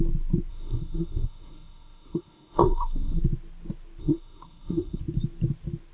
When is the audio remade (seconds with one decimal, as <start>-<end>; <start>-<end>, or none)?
0.5-3.2; 4.0-5.0